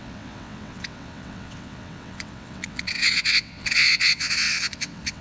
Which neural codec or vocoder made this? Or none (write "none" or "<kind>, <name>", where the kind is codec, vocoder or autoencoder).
vocoder, WaveNeXt